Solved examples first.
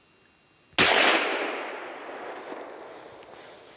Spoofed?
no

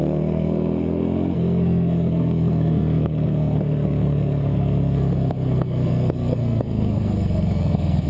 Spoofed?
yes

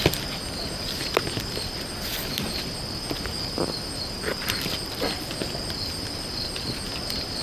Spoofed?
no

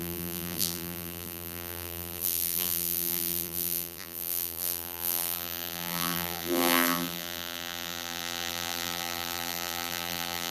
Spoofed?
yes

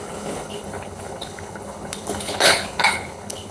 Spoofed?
yes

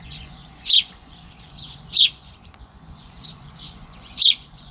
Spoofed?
yes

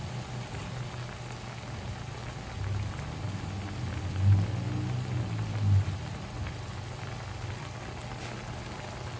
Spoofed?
no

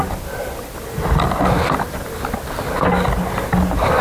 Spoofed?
no